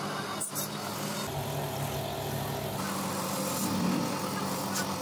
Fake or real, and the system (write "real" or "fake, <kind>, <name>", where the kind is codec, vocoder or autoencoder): real